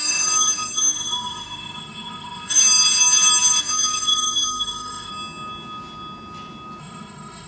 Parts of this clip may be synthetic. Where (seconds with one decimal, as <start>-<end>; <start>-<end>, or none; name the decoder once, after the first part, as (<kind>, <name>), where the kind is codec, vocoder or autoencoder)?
0.0-2.6 (autoencoder, DAC-VAE); 3.6-5.1; 6.8-7.5